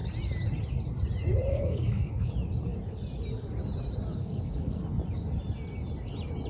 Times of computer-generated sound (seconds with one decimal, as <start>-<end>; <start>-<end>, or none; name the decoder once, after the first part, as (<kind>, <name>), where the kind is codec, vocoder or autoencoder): 1.5-2.3 (codec, SNAC); 4.2-4.8